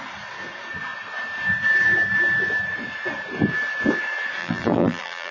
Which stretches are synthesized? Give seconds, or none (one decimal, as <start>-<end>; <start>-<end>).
4.4-5.3